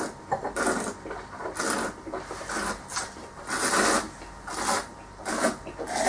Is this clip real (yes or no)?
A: yes